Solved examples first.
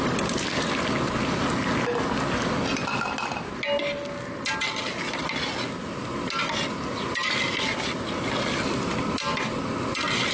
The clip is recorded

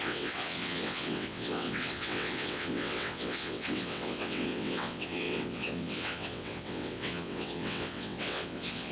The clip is remade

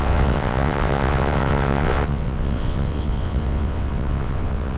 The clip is remade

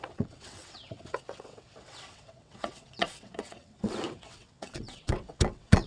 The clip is remade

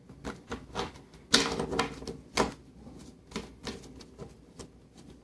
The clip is recorded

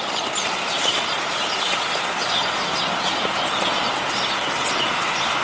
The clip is recorded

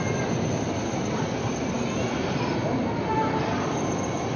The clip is recorded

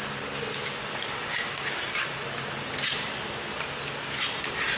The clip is recorded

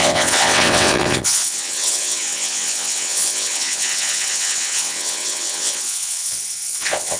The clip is remade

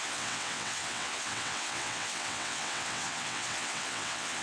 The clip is remade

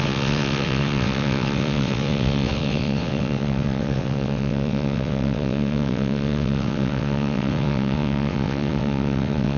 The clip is remade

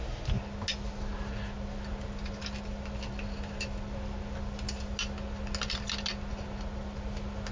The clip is recorded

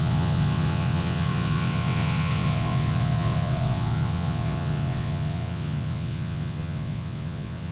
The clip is remade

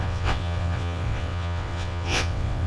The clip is remade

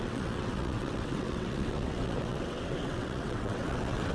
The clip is remade